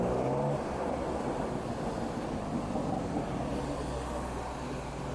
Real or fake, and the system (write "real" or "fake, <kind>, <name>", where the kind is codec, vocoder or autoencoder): real